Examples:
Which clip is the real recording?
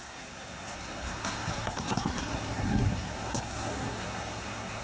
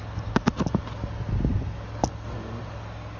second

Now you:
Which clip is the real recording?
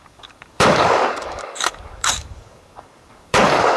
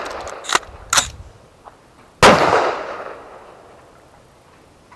second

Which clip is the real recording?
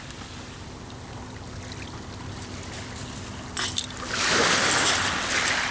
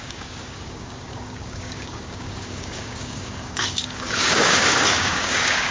first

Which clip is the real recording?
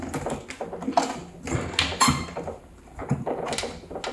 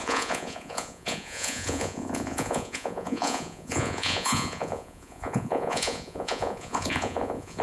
first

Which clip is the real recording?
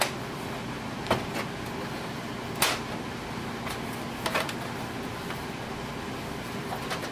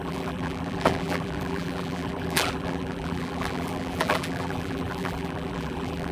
first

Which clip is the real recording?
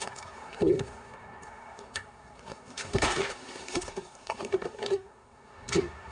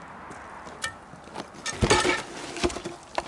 second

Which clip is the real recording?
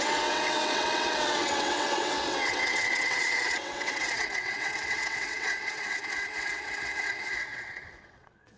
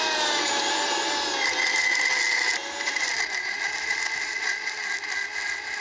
second